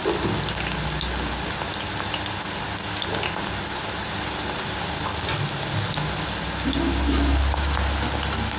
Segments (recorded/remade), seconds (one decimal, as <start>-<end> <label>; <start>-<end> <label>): 0.0-8.6 recorded